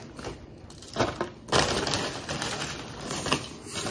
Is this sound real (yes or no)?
yes